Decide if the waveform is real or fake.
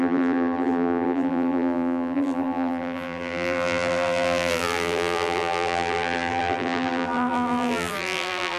fake